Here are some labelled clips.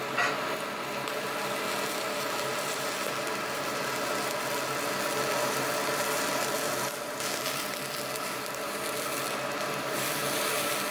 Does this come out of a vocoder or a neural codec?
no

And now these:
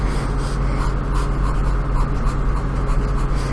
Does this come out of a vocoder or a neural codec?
no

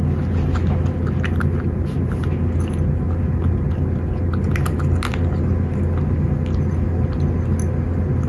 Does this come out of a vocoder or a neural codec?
no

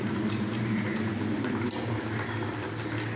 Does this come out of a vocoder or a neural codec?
no